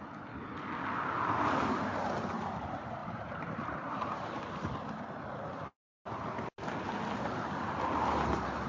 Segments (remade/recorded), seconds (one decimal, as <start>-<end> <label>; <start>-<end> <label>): 0.0-3.0 recorded; 3.0-4.4 remade; 4.4-8.7 recorded